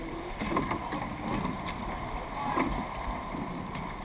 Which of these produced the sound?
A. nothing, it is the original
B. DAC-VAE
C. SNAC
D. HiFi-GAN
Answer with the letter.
A